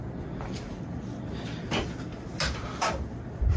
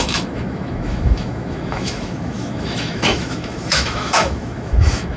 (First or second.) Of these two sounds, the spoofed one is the second